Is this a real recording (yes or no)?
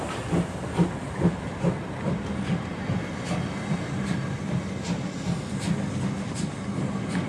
yes